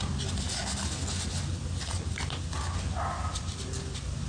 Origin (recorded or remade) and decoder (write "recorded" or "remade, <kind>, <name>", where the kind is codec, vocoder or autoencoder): recorded